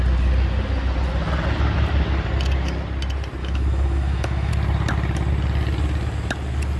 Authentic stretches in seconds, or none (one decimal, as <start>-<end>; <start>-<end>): 0.0-3.4; 4.5-6.8